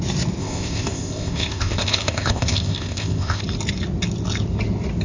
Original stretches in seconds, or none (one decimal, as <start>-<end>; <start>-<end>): 0.0-0.4; 3.4-5.0